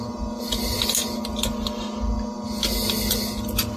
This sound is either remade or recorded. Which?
recorded